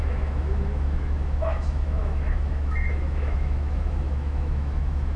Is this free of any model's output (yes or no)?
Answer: no